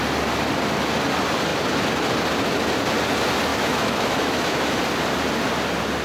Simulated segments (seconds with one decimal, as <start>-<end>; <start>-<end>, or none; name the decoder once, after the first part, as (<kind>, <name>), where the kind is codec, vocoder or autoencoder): 3.5-4.8 (autoencoder, DAC-VAE)